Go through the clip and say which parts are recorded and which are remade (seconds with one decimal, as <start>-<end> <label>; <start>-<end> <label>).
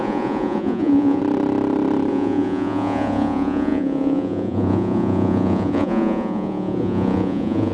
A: 0.0-1.2 remade; 1.2-2.1 recorded; 2.1-7.7 remade